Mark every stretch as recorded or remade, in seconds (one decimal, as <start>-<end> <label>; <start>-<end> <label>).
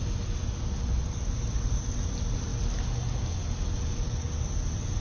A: 0.0-5.0 recorded